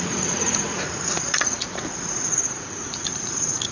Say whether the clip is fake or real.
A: fake